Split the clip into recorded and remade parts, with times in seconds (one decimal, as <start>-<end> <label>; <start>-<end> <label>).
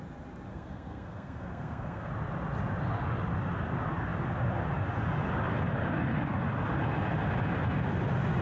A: 0.0-0.5 recorded; 0.5-2.1 remade; 2.1-8.4 recorded